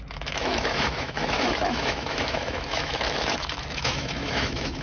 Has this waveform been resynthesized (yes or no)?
yes